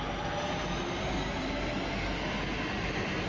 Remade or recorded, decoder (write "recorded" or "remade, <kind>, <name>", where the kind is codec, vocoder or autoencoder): recorded